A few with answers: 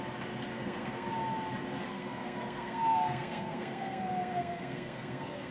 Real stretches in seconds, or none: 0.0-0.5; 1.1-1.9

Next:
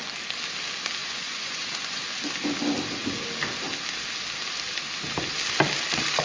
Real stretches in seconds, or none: 0.0-1.0; 2.0-6.2

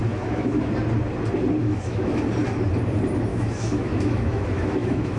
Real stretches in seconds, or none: 0.7-1.6; 2.2-3.3

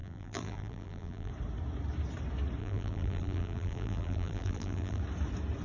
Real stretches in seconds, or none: 1.3-2.6; 5.0-5.6

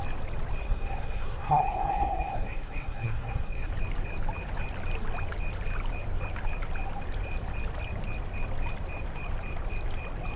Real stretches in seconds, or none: 0.0-0.6; 3.7-10.4

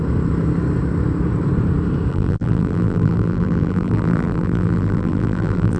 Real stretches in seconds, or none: 0.0-2.1